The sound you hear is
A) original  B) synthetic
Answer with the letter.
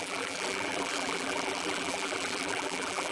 B